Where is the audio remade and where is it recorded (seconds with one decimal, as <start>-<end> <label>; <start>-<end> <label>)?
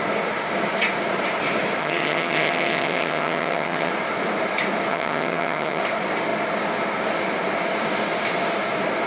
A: 0.0-1.8 recorded; 1.8-3.9 remade; 3.9-4.9 recorded; 4.9-5.8 remade; 5.8-9.1 recorded